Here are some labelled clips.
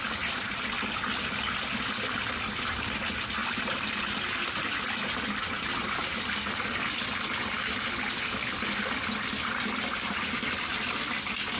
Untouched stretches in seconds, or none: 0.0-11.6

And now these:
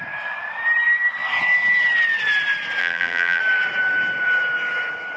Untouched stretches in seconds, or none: 0.0-2.8; 3.4-5.2

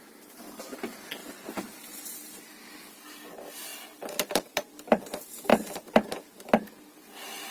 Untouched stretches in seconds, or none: 0.0-1.2; 2.4-3.7; 5.0-5.5; 6.0-7.5

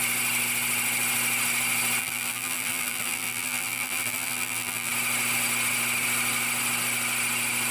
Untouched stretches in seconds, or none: 0.0-2.0; 4.9-7.7

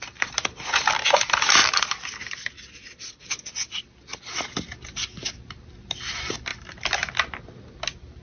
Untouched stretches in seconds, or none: 0.0-1.6; 3.2-6.5; 7.1-8.2

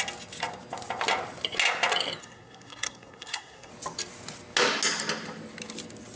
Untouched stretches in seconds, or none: 0.0-2.2; 3.7-6.2

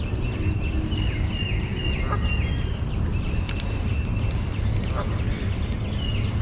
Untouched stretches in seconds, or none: 0.0-6.4

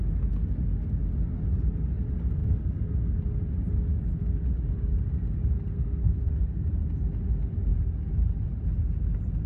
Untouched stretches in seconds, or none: 0.0-5.7; 6.3-9.5